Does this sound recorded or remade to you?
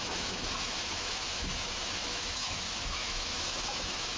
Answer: remade